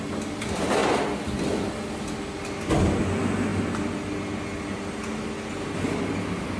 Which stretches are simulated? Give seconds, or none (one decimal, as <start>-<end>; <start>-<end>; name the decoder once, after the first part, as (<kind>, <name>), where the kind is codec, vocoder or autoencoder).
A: none